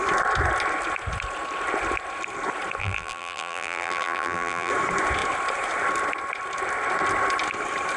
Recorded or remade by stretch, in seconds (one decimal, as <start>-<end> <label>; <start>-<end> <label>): 0.0-2.8 recorded; 2.8-4.7 remade; 4.7-8.0 recorded